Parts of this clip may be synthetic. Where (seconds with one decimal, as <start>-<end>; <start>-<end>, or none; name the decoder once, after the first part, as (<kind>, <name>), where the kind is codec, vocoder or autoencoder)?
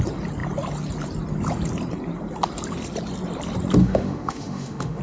3.8-5.0 (autoencoder, DAC-VAE)